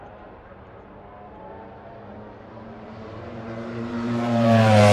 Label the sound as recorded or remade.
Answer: remade